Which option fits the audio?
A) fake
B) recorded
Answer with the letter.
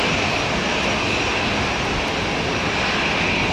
B